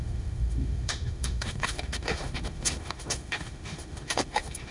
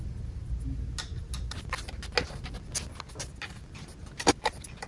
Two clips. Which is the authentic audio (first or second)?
second